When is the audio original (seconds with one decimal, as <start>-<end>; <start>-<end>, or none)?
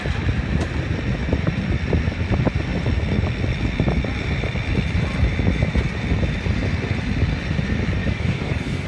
0.0-8.0